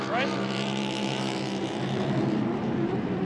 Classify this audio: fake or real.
fake